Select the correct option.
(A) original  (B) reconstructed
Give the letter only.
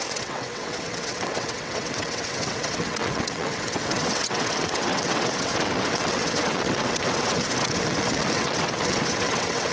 B